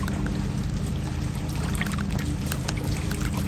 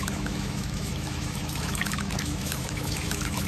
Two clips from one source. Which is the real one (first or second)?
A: first